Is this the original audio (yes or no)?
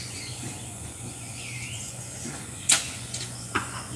no